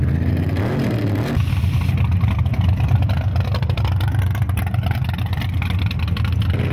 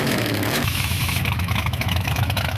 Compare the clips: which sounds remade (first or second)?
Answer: second